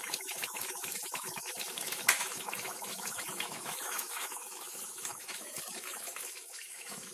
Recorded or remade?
remade